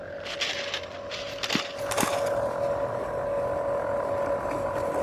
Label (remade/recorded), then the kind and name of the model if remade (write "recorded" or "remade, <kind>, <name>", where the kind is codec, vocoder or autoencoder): recorded